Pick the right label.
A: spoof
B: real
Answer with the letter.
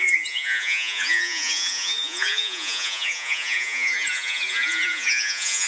A